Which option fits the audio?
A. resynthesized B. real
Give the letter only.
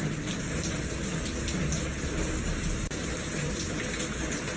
A